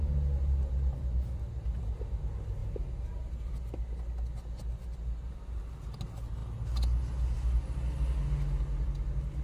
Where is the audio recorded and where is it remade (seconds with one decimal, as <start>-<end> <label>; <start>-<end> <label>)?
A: 0.0-9.4 recorded